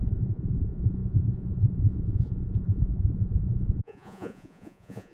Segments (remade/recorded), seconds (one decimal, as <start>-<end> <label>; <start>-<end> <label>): 0.0-5.1 remade